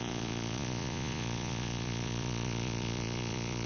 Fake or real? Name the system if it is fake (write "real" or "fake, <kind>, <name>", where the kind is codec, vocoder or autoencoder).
fake, vocoder, Vocos